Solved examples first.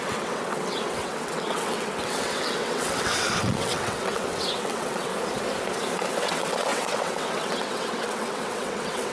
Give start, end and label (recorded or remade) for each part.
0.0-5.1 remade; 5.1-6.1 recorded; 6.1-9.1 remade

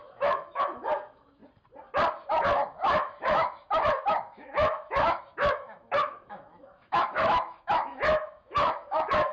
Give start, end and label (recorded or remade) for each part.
0.0-1.4 remade; 1.4-2.3 recorded; 2.3-9.3 remade

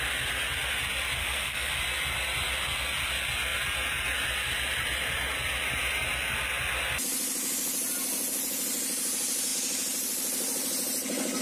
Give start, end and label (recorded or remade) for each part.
0.0-1.2 recorded; 1.2-1.7 remade; 1.7-11.4 recorded

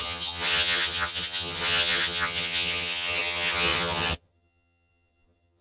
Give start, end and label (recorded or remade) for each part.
0.0-5.6 remade

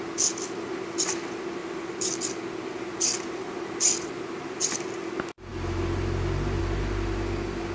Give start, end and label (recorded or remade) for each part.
0.0-1.6 recorded; 1.6-2.4 remade; 2.4-7.7 recorded

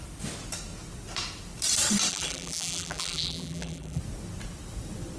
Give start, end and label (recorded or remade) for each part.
0.0-2.1 recorded; 2.1-4.0 remade; 4.0-5.2 recorded

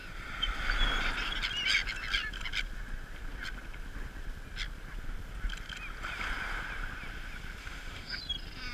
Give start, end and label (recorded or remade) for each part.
0.0-7.6 recorded; 7.6-8.2 remade; 8.2-8.7 recorded